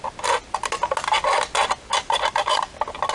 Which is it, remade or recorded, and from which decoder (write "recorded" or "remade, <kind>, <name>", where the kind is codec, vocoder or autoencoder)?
recorded